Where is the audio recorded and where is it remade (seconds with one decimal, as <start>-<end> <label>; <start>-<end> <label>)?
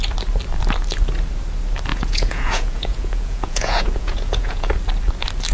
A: 0.0-1.9 recorded; 1.9-4.7 remade; 4.7-5.5 recorded